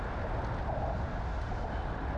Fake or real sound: real